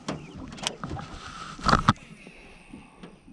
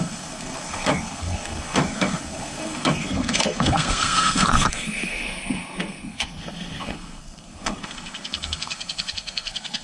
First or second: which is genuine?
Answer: first